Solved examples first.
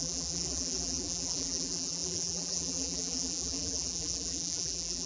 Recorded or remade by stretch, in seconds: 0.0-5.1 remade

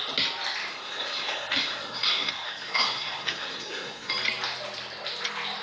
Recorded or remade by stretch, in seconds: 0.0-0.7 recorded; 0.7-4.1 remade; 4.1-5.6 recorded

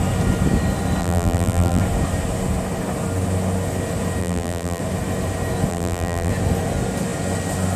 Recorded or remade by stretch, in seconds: 0.0-1.0 recorded; 1.0-1.8 remade; 1.8-4.2 recorded; 4.2-4.8 remade; 4.8-5.7 recorded; 5.7-6.3 remade; 6.3-7.8 recorded

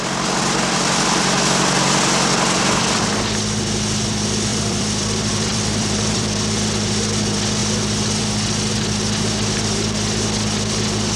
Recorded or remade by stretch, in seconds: 0.0-4.5 recorded; 4.5-6.5 remade; 6.5-11.2 recorded

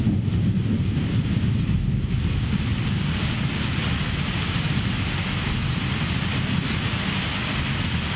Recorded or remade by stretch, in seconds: 0.0-8.2 recorded